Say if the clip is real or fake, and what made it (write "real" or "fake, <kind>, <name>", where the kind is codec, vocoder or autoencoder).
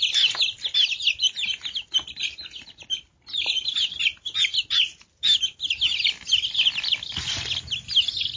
real